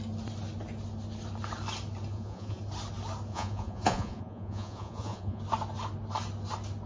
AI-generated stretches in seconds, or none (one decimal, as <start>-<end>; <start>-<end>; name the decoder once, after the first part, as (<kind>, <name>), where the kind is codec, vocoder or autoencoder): 2.1-2.6 (vocoder, Vocos); 3.3-5.4